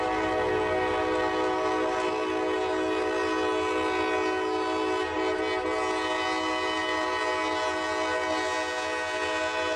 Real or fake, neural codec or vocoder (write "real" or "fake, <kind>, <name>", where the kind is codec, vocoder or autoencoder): real